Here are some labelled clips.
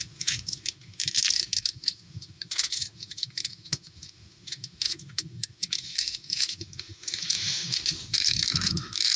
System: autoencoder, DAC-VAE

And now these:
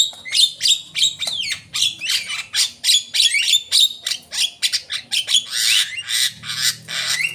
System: none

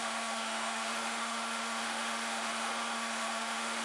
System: autoencoder, DAC-VAE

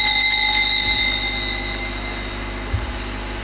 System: none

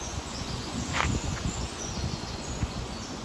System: vocoder, Vocos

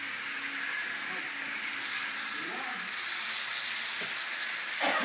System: none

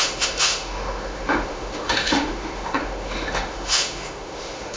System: autoencoder, DAC-VAE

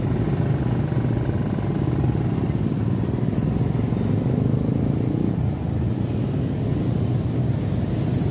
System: none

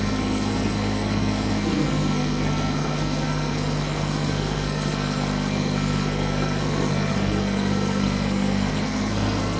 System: codec, SNAC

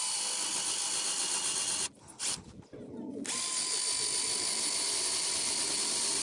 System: none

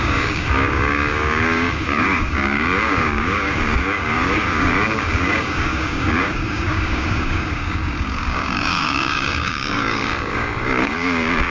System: codec, DAC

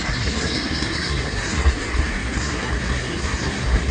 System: codec, SNAC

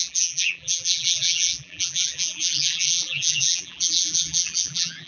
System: vocoder, BigVGAN v2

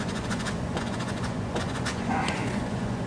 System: vocoder, Vocos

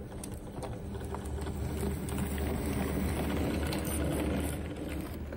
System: none